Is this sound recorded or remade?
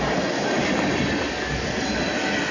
recorded